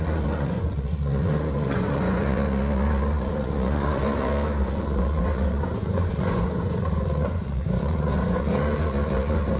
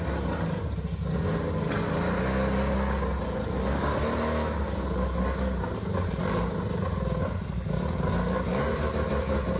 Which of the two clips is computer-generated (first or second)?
first